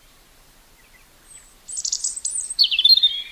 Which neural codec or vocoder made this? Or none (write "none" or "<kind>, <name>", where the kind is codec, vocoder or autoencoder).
vocoder, BigVGAN v2